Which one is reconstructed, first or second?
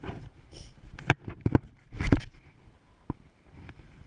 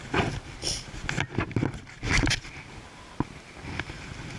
first